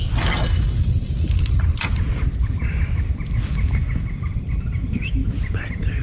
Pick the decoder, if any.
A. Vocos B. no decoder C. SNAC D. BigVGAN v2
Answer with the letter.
B